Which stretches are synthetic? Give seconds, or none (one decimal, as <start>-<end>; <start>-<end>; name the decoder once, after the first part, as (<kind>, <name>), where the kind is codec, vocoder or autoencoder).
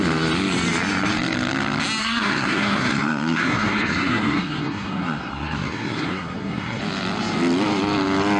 2.0-6.8 (codec, SNAC)